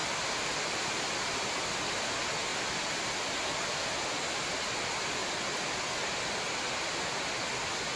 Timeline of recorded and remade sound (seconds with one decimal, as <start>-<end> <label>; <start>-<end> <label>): 0.0-0.9 remade; 0.9-8.0 recorded